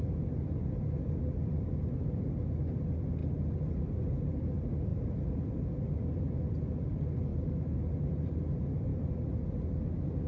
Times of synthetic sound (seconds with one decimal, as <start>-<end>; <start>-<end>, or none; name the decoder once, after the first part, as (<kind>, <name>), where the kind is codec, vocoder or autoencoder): 4.9-5.4 (vocoder, BigVGAN v2)